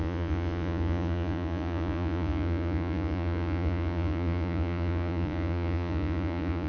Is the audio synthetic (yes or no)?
yes